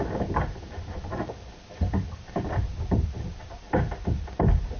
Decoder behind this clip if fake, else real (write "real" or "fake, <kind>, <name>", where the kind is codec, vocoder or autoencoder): real